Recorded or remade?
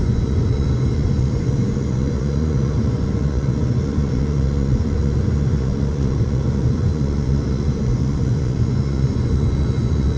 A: remade